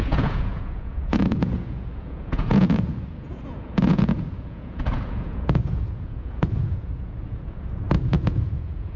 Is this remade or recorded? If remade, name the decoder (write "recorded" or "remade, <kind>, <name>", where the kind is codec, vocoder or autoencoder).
remade, vocoder, Vocos